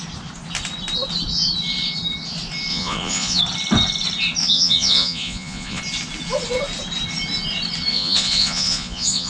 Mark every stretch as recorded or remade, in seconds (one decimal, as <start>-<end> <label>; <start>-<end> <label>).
0.0-2.7 recorded; 2.7-3.4 remade; 3.4-4.4 recorded; 4.4-5.8 remade; 5.8-7.9 recorded; 7.9-9.3 remade

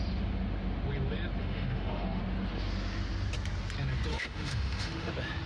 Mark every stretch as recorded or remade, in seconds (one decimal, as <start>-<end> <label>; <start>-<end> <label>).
0.0-1.4 recorded; 1.4-2.2 remade; 2.2-4.1 recorded; 4.1-5.1 remade; 5.1-5.5 recorded

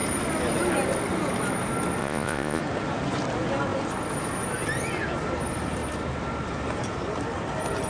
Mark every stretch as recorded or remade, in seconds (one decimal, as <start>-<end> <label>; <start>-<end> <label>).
0.0-2.0 recorded; 2.0-2.6 remade; 2.6-7.9 recorded

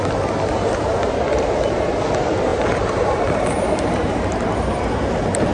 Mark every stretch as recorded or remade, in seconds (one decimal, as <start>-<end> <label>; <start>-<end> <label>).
0.0-2.5 recorded; 2.5-5.5 remade

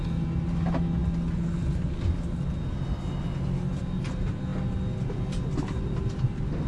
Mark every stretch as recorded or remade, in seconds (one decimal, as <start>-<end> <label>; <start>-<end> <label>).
0.0-6.7 recorded

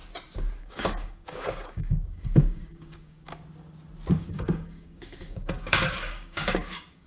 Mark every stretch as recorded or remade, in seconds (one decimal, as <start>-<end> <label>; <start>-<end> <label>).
0.0-0.6 recorded; 0.6-3.3 remade; 3.3-4.1 recorded; 4.1-7.1 remade

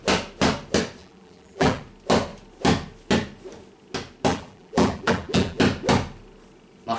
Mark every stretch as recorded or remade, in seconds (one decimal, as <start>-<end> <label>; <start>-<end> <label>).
0.0-1.0 recorded; 1.0-1.8 remade; 1.8-4.3 recorded; 4.3-5.6 remade; 5.6-7.0 recorded